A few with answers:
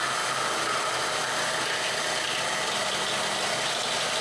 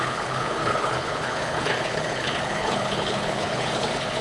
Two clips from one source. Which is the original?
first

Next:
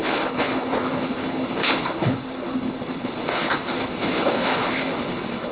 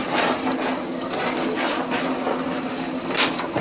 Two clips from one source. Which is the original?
second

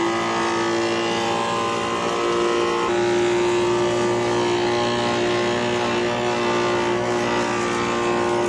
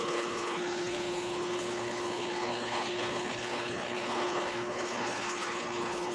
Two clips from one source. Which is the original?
first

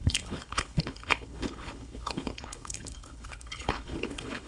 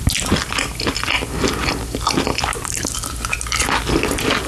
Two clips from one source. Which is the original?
second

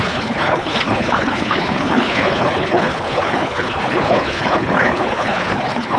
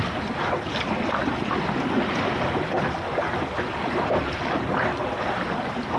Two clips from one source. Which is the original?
second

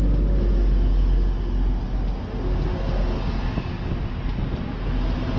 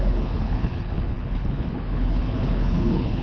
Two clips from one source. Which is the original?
first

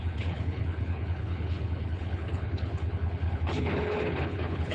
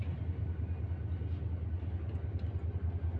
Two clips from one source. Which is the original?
second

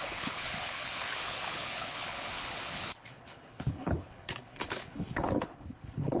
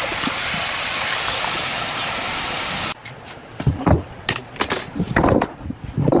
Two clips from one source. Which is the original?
second